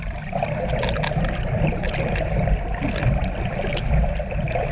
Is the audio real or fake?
real